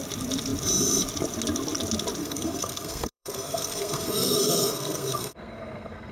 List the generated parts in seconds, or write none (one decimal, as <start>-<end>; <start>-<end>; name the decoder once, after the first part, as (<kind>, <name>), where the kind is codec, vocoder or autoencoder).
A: 2.2-6.1 (codec, SNAC)